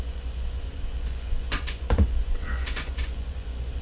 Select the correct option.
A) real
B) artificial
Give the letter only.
B